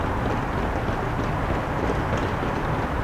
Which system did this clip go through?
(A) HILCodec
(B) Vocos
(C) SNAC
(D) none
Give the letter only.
D